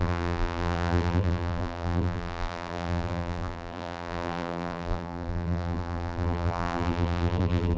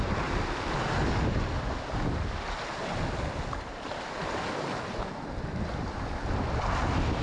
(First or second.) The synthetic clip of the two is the first